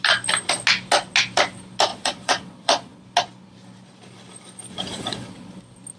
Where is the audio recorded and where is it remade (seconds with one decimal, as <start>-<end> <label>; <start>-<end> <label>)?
0.0-1.9 recorded; 1.9-3.0 remade; 3.0-4.7 recorded; 4.7-5.6 remade; 5.6-6.0 recorded

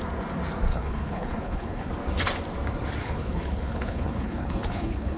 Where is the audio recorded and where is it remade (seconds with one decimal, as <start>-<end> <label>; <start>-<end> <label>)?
0.0-0.7 recorded; 0.7-1.9 remade; 1.9-3.0 recorded; 3.0-5.2 remade

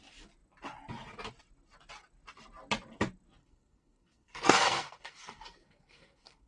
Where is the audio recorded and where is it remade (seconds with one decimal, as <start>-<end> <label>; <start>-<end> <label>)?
0.0-3.4 recorded; 3.4-6.5 remade